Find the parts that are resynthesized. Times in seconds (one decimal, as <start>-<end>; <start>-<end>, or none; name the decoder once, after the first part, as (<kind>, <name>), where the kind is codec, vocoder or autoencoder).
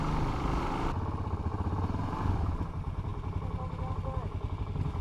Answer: 1.5-2.7 (vocoder, BigVGAN v2)